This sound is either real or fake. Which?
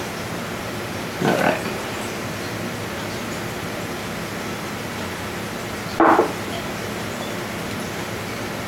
real